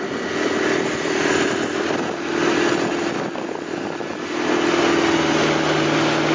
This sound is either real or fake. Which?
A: real